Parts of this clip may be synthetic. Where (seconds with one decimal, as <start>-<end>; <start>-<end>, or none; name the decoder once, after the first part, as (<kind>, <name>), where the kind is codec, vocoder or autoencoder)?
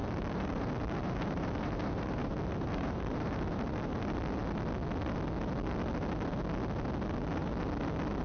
0.0-4.0 (vocoder, BigVGAN v2)